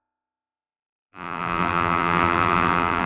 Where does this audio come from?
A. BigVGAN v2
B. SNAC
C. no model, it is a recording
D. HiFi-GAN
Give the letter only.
A